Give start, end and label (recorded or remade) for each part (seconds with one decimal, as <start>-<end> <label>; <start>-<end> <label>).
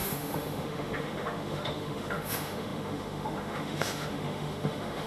0.0-5.1 remade